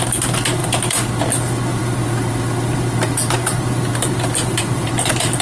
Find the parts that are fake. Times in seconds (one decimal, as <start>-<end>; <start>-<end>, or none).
1.7-4.9